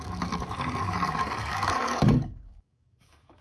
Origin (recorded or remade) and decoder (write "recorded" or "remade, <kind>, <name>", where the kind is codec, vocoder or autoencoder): remade, codec, DAC